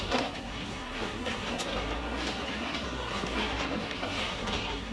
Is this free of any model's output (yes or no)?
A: no